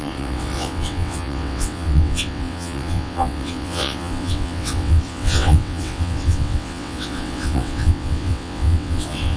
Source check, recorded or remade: remade